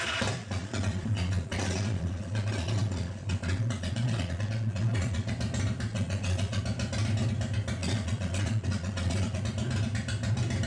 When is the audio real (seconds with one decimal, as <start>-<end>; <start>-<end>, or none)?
0.0-0.4; 5.3-5.9; 6.6-7.8; 9.4-10.7